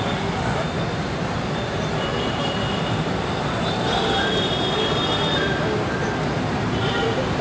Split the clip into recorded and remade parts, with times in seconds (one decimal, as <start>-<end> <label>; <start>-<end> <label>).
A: 0.0-2.1 recorded; 2.1-4.5 remade; 4.5-7.4 recorded